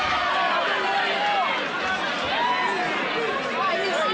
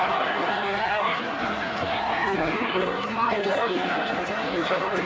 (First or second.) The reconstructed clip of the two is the second